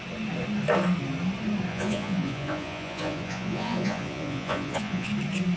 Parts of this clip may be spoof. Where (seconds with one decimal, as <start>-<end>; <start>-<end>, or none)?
1.7-5.1